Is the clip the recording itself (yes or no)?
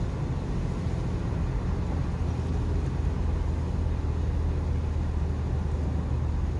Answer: yes